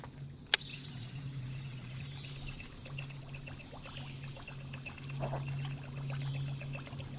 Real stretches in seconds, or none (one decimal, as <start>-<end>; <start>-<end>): 0.0-0.7; 2.0-7.2